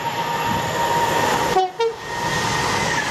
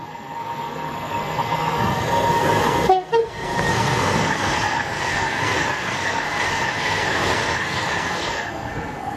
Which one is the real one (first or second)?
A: first